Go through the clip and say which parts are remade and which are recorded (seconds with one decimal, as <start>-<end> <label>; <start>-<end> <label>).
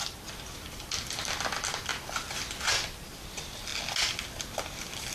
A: 0.0-3.7 remade; 3.7-4.6 recorded; 4.6-5.1 remade